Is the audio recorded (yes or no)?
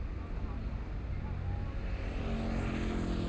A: yes